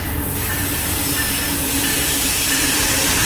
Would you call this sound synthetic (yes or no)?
yes